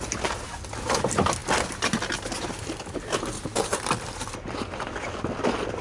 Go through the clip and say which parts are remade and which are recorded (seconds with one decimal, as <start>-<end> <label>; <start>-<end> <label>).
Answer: 0.0-5.8 recorded